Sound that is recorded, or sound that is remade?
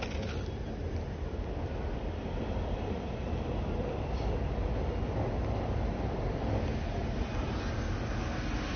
recorded